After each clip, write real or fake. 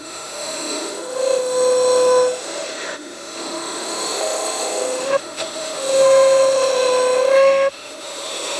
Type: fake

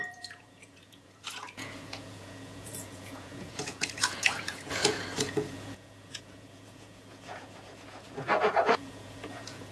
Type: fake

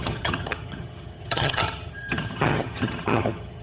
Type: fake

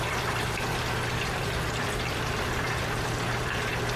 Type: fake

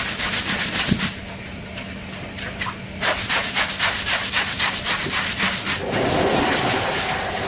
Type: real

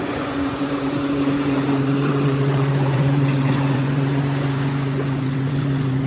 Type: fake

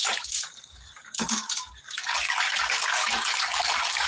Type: fake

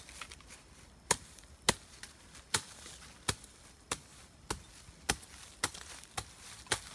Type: real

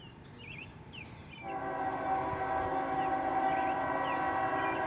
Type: real